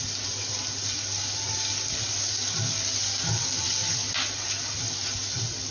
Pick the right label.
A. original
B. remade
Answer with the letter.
A